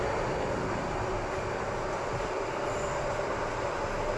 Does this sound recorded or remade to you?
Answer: recorded